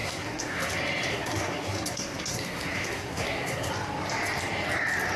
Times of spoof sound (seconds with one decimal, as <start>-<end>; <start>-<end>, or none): 0.0-0.7; 1.1-3.7